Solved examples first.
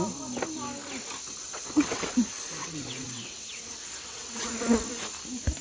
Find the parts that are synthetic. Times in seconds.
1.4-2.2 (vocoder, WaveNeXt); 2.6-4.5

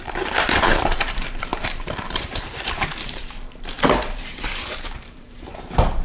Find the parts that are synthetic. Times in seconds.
0.0-6.0 (vocoder, BigVGAN v2)

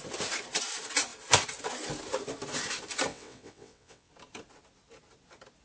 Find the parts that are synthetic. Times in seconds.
3.1-4.1 (vocoder, WaveNeXt)

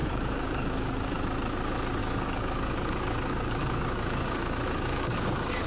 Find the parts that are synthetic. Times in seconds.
0.0-1.2 (codec, DAC); 2.0-5.7

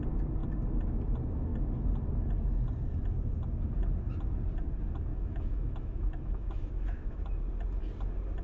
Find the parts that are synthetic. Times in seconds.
5.1-7.4 (autoencoder, DAC-VAE)

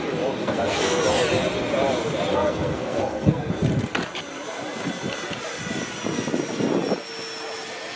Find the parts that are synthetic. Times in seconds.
0.4-1.0 (codec, SNAC); 2.3-3.5

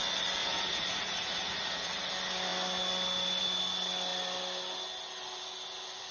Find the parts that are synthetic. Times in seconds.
0.4-2.1 (vocoder, Vocos)

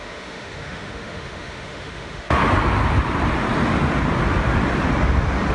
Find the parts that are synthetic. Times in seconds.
0.0-2.4 (autoencoder, DAC-VAE)